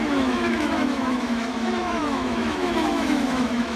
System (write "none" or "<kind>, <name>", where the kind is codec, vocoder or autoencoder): autoencoder, DAC-VAE